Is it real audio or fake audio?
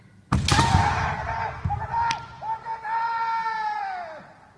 real